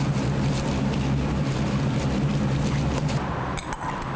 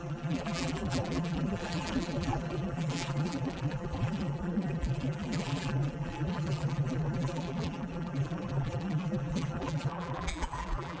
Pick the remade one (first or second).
second